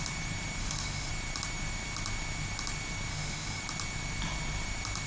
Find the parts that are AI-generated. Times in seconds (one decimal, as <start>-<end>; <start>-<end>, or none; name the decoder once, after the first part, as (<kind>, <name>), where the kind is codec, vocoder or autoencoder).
0.6-1.1 (autoencoder, DAC-VAE); 3.1-3.6